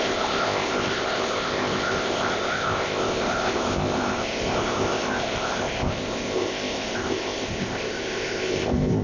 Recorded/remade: remade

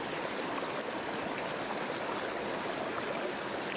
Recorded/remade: recorded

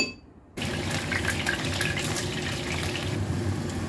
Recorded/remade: recorded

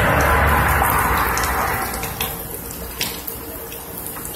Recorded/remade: recorded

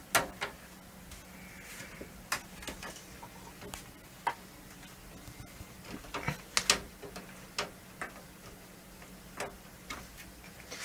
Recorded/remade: recorded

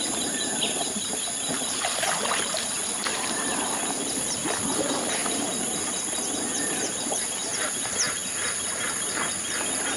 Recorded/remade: recorded